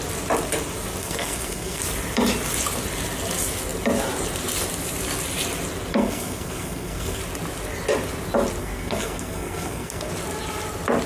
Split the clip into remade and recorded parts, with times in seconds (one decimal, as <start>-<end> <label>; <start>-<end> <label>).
0.0-1.0 recorded; 1.0-1.8 remade; 1.8-5.9 recorded; 5.9-7.2 remade; 7.2-8.6 recorded; 8.6-10.1 remade; 10.1-11.1 recorded